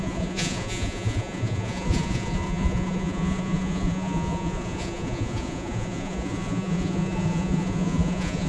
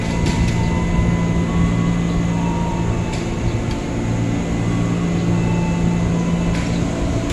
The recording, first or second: second